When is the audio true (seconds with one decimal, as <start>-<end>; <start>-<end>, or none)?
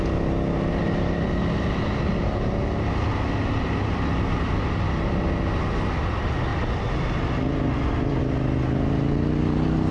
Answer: 0.0-9.9